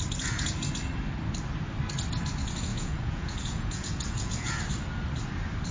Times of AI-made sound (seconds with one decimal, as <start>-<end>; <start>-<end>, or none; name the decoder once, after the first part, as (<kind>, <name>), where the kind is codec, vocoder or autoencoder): 2.7-4.6 (vocoder, Vocos)